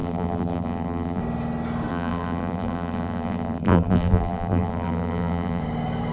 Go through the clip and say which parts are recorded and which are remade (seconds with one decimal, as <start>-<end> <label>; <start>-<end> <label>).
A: 0.0-1.2 remade; 1.2-1.9 recorded; 1.9-5.6 remade; 5.6-6.1 recorded